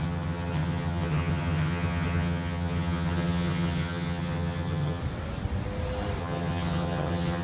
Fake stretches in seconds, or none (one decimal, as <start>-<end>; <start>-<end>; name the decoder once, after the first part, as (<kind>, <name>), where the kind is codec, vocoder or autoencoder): 0.0-5.0 (vocoder, HiFi-GAN); 6.2-7.4